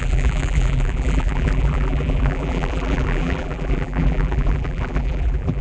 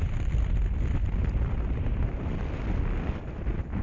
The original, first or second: second